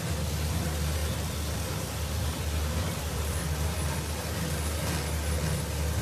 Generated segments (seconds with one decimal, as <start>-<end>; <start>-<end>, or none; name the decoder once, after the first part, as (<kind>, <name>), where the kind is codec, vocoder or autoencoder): 1.0-3.4 (vocoder, BigVGAN v2)